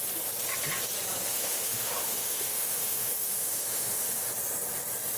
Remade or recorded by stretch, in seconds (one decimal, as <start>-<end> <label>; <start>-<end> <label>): 0.0-1.3 recorded; 1.3-4.3 remade; 4.3-5.2 recorded